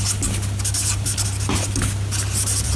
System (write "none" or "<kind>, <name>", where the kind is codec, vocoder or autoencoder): none